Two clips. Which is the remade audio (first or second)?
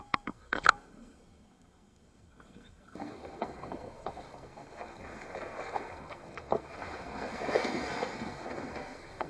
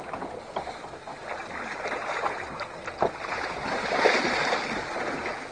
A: first